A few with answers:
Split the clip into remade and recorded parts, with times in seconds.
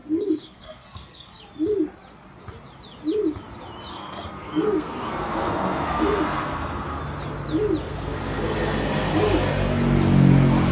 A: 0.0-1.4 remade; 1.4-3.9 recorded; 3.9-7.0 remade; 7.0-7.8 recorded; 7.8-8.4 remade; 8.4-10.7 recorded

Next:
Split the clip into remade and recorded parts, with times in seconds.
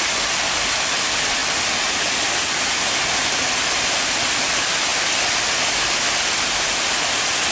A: 0.0-7.5 recorded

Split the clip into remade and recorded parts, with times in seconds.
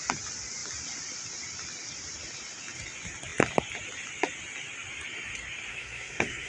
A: 0.0-5.7 recorded; 5.7-6.5 remade